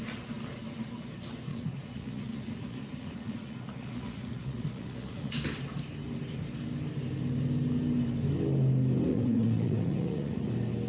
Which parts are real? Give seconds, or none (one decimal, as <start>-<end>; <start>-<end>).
0.0-1.5; 5.3-9.1; 10.5-10.9